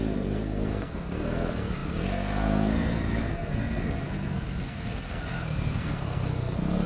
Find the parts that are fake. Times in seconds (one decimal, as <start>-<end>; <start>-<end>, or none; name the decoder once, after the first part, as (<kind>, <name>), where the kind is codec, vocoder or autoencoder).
0.0-6.9 (codec, SNAC)